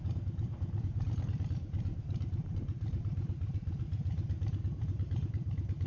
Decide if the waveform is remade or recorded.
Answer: remade